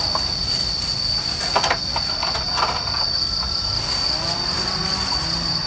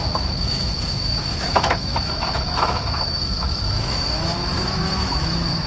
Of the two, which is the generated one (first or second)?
second